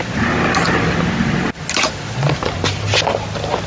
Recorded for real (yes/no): yes